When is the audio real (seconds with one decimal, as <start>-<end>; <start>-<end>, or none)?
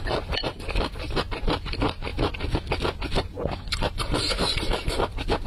0.0-5.5